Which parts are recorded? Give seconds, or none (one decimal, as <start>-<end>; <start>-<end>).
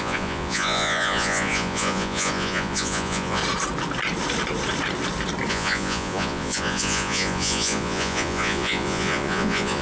3.4-5.5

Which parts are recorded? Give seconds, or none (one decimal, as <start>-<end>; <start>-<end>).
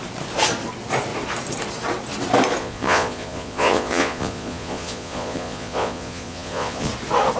0.0-2.6; 6.9-7.4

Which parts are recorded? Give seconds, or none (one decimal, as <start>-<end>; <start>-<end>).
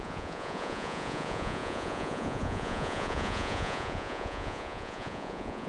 none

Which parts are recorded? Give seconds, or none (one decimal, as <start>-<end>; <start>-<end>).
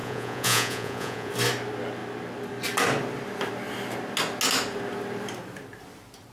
1.3-6.3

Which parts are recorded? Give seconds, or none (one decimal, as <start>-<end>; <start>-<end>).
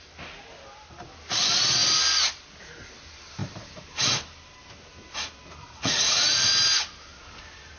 0.0-5.6; 6.5-7.8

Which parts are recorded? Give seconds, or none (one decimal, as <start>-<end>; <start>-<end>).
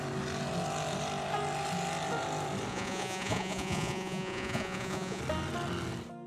0.0-2.7; 5.2-6.3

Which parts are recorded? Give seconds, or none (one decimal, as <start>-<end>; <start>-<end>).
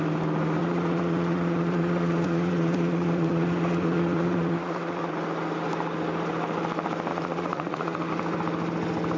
0.0-0.6; 5.1-7.1; 8.1-9.2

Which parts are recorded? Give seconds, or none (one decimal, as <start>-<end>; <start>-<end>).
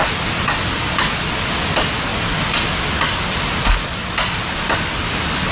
0.0-5.5